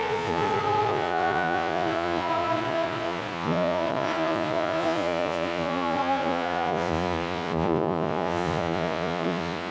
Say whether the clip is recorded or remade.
remade